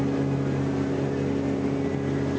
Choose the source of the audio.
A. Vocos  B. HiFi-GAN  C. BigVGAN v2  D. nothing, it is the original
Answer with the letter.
D